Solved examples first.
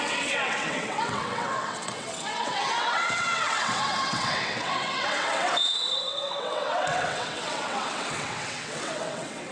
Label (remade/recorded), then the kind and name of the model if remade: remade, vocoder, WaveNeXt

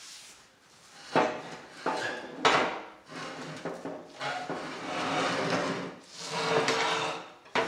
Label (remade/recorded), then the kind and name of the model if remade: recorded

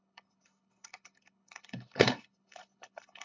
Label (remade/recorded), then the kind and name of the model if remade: remade, codec, HILCodec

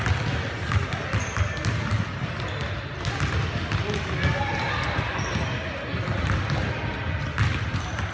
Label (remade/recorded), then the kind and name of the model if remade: recorded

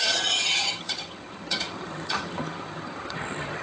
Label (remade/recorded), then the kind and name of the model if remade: remade, vocoder, HiFi-GAN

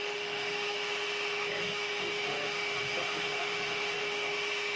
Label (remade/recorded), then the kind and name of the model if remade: remade, autoencoder, DAC-VAE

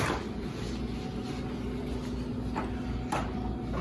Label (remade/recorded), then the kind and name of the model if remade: recorded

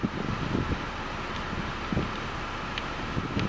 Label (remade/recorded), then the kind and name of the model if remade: recorded